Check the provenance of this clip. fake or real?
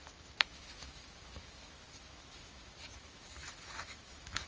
fake